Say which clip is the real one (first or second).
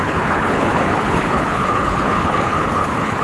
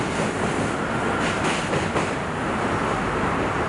second